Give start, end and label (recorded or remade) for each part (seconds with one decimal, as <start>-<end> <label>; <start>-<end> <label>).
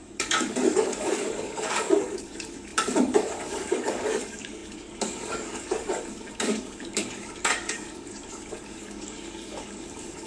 0.0-10.3 remade